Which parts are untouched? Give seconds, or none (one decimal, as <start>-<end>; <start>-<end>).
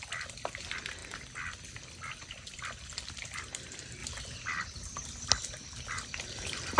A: 0.0-6.8